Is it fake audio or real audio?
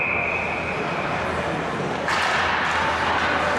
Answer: real